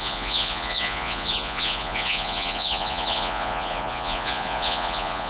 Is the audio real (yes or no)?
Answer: no